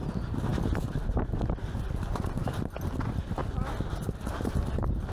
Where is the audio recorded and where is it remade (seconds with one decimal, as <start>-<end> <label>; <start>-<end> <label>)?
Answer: 0.0-5.1 recorded